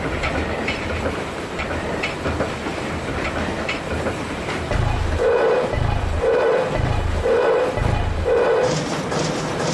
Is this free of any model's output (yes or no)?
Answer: no